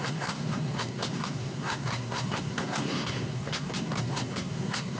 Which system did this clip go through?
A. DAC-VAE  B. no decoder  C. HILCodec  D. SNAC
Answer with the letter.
D